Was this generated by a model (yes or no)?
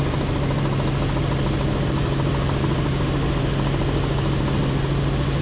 no